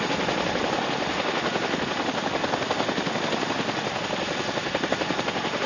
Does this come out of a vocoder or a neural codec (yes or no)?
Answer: no